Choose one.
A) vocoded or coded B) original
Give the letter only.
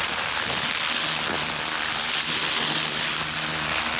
B